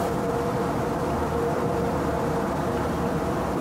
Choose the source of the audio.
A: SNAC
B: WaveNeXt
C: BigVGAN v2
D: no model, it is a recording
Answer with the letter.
C